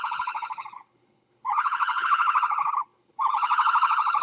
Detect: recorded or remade remade